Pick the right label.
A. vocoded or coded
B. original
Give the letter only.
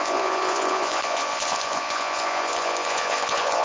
A